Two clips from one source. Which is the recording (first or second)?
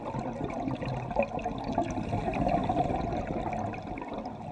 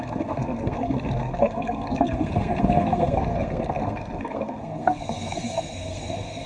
first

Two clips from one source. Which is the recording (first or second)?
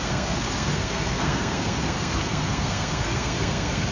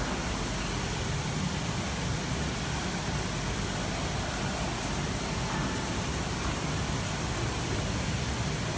second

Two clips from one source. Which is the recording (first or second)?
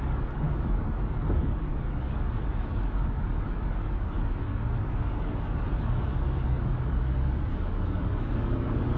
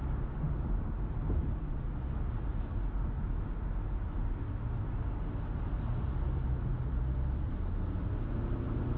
second